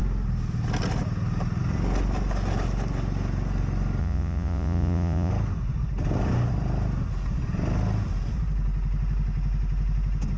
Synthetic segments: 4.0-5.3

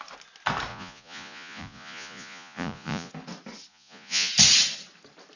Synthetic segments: 0.7-3.1; 3.7-4.3